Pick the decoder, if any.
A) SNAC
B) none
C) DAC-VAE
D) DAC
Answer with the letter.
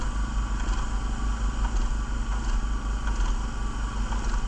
B